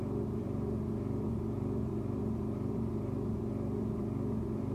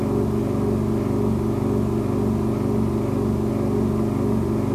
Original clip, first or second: second